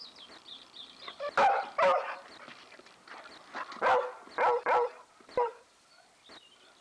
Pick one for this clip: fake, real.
real